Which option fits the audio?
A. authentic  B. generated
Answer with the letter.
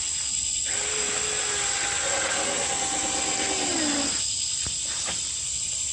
A